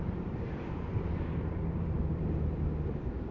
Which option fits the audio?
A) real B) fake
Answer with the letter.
B